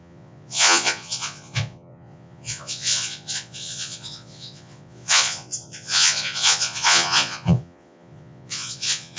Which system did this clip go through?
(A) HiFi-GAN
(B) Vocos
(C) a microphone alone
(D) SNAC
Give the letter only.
B